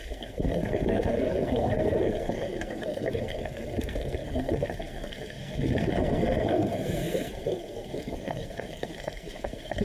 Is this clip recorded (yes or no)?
no